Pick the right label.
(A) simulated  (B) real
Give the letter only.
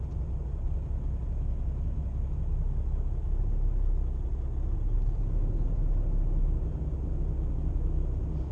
B